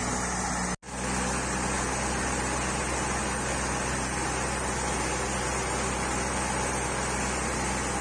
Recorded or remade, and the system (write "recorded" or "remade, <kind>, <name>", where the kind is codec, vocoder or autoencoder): recorded